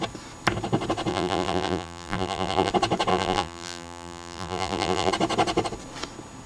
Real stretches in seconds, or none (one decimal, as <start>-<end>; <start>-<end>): 0.0-1.1; 2.7-3.1; 5.1-6.5

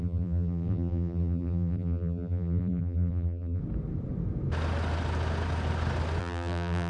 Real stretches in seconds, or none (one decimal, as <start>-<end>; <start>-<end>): 3.6-6.2

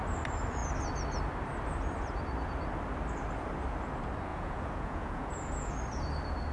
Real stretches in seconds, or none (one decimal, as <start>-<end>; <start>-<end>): 0.0-4.3; 5.7-6.5

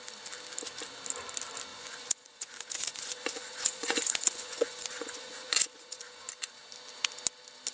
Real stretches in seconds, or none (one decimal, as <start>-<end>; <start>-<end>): 0.0-1.7; 6.3-7.7

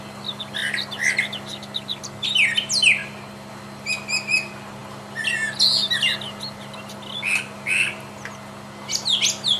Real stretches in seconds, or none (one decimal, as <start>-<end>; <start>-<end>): 0.0-9.6